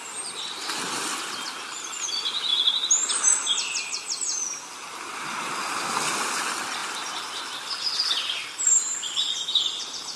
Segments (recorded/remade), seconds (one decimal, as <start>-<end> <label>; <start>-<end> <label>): 0.0-10.2 recorded